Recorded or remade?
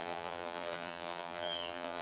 remade